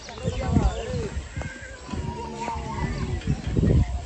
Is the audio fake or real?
real